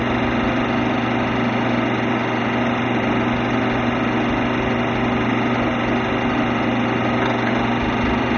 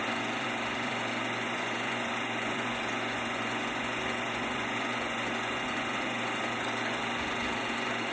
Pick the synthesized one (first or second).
second